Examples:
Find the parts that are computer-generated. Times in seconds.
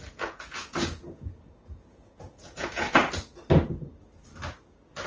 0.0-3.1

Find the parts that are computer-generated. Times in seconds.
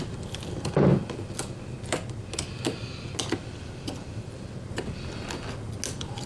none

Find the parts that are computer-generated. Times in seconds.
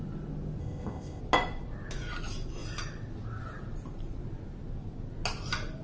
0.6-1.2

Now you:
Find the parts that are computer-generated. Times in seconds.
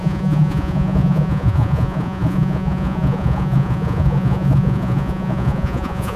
0.0-6.2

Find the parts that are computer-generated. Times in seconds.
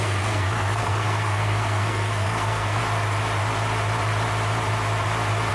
0.0-2.8